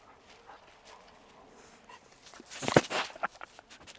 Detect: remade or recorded recorded